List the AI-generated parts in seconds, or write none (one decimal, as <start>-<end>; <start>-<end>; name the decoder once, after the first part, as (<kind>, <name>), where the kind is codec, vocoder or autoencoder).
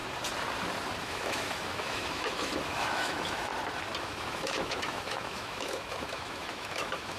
1.0-3.5 (autoencoder, DAC-VAE); 4.0-7.2